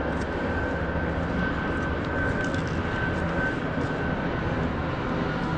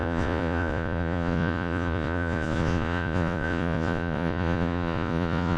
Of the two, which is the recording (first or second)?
first